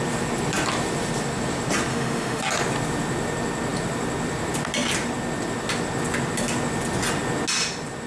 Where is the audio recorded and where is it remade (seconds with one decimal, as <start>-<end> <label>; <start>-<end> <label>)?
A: 0.0-1.9 recorded; 1.9-2.4 remade; 2.4-8.1 recorded